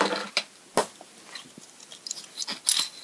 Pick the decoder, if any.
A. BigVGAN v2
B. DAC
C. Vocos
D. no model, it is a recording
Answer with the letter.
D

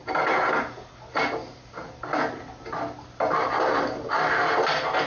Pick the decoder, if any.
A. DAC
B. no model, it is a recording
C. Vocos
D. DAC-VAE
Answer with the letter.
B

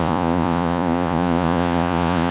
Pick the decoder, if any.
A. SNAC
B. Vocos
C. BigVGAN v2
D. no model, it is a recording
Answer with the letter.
B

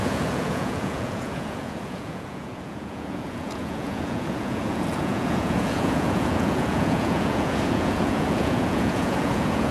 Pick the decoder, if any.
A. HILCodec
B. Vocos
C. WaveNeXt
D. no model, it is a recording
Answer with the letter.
B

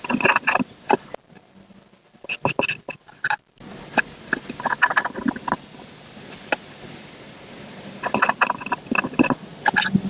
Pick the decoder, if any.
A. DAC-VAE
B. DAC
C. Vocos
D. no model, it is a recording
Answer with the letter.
D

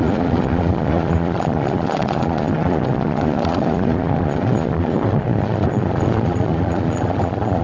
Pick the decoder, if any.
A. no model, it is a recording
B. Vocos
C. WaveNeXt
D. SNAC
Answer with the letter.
B